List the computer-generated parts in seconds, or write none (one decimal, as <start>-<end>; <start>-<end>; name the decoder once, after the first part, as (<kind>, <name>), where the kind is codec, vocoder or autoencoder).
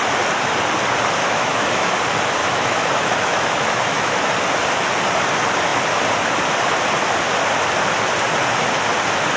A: 1.2-1.9 (autoencoder, DAC-VAE); 2.4-4.3